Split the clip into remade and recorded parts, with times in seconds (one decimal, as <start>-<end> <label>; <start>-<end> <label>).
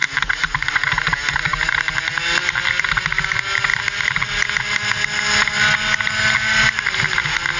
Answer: 0.0-7.6 recorded